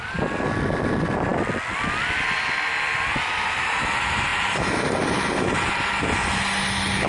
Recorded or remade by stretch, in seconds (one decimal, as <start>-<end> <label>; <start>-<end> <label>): 0.0-7.1 recorded